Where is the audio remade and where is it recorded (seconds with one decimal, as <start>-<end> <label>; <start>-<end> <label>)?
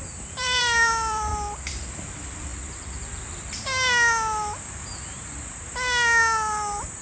0.0-1.3 remade; 1.3-1.9 recorded; 1.9-2.5 remade; 2.5-7.0 recorded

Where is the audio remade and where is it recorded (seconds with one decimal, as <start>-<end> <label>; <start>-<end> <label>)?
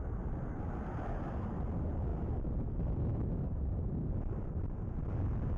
0.0-2.1 remade; 2.1-5.6 recorded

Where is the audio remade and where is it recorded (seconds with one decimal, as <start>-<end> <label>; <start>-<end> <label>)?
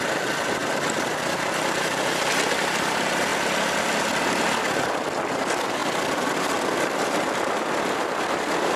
0.0-3.3 remade; 3.3-5.2 recorded; 5.2-8.8 remade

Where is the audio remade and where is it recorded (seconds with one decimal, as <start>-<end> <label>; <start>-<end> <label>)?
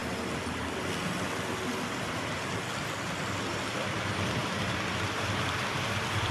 0.0-3.8 recorded; 3.8-6.3 remade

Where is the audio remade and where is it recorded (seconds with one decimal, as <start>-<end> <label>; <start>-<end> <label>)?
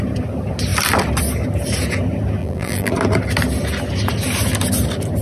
0.0-2.4 recorded; 2.4-2.9 remade; 2.9-5.2 recorded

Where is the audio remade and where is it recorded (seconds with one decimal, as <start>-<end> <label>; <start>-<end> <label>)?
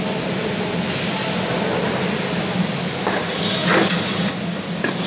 0.0-1.2 recorded; 1.2-2.7 remade; 2.7-5.1 recorded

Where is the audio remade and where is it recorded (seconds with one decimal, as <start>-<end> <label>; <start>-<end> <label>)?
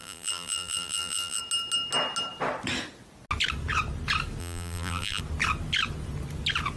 0.0-1.4 remade; 1.4-4.4 recorded; 4.4-5.2 remade; 5.2-6.8 recorded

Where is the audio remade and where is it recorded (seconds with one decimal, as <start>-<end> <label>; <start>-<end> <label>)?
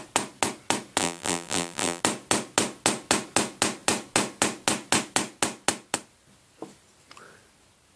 0.0-1.0 recorded; 1.0-2.0 remade; 2.0-8.0 recorded